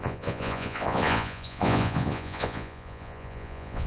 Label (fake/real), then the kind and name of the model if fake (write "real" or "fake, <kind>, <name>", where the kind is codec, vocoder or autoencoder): fake, vocoder, Vocos